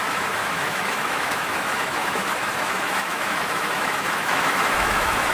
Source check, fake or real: fake